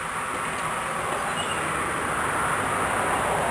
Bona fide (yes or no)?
yes